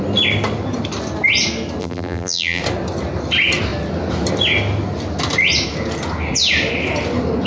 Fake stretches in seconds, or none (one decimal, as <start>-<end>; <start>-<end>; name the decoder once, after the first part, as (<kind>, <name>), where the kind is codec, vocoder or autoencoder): 1.8-2.6 (vocoder, BigVGAN v2)